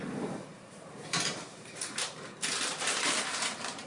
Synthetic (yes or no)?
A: yes